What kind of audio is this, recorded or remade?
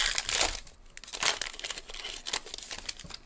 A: recorded